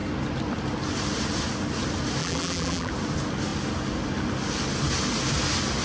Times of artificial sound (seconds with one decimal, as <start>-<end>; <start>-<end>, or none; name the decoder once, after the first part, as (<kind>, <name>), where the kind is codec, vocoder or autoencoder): 2.2-2.9 (vocoder, BigVGAN v2)